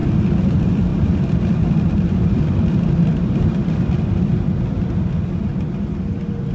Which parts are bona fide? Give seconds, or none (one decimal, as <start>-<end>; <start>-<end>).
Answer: 0.0-0.9; 4.7-6.5

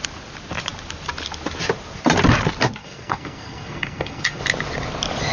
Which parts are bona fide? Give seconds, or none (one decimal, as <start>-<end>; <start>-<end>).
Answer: 0.0-2.8; 4.4-5.3

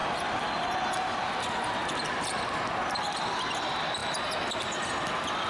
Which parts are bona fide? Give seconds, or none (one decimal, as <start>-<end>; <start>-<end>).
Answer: 0.0-5.5